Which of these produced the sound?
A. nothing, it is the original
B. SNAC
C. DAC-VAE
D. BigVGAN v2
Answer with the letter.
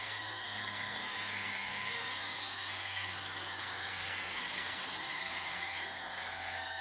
B